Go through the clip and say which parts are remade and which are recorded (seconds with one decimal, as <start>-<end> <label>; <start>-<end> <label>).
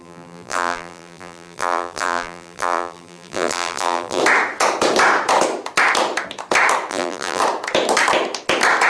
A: 0.0-4.2 remade; 4.2-6.9 recorded; 6.9-7.4 remade; 7.4-8.9 recorded